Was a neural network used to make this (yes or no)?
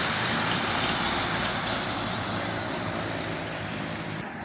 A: yes